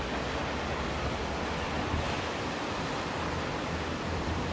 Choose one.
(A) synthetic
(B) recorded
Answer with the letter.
B